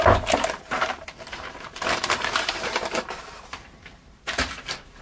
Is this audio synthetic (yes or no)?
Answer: yes